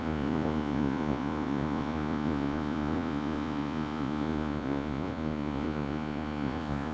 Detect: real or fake fake